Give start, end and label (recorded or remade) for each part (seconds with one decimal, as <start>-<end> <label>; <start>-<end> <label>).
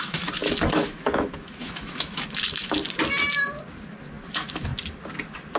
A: 0.0-2.8 remade; 2.8-4.3 recorded; 4.3-4.7 remade; 4.7-5.6 recorded